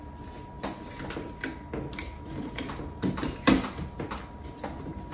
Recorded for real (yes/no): yes